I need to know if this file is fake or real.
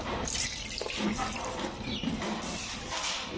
fake